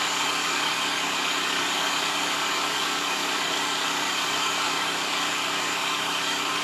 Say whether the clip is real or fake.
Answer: fake